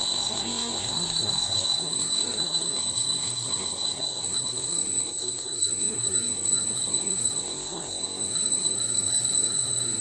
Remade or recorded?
remade